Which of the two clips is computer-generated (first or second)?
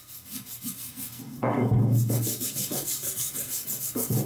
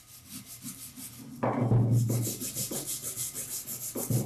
first